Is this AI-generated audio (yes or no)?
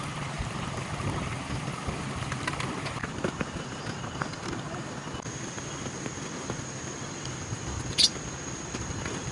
yes